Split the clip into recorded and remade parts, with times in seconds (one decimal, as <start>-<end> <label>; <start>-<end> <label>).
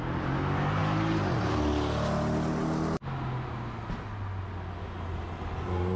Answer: 0.0-6.0 recorded